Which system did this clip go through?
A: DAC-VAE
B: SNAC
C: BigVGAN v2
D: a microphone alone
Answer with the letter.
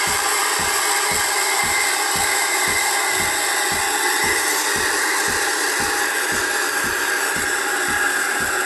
D